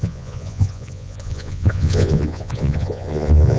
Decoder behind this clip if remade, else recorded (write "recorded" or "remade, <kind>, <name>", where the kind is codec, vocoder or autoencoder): remade, vocoder, Vocos